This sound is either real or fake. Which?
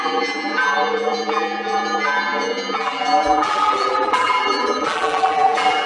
fake